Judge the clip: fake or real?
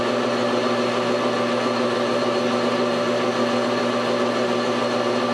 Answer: real